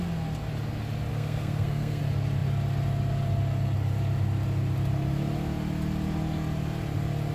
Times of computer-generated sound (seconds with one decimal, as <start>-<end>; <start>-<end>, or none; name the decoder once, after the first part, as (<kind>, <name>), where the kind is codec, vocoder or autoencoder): 1.1-2.0 (codec, SNAC)